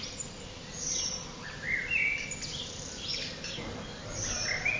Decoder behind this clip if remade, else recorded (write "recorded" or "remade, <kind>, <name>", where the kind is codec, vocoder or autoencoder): recorded